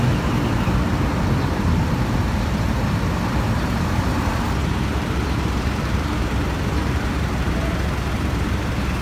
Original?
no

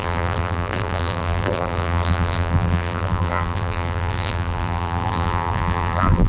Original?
no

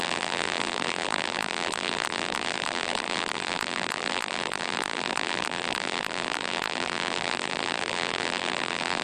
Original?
no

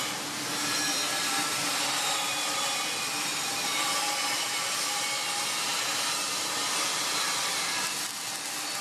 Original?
no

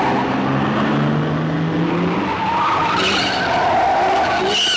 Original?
yes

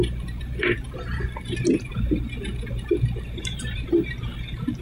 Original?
no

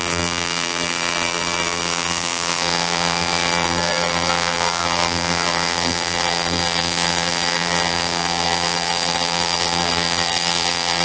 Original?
no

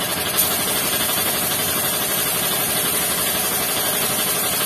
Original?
yes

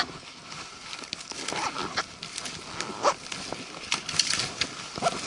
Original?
yes